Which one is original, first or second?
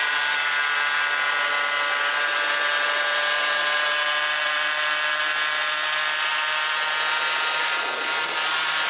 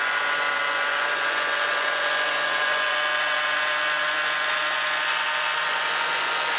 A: first